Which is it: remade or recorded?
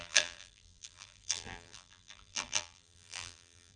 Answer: remade